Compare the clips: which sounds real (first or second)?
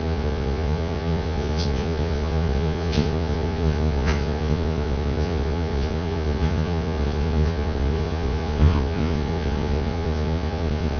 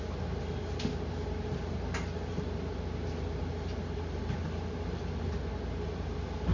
second